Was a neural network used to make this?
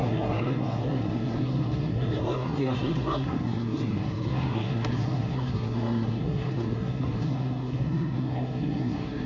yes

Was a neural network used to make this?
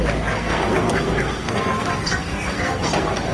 yes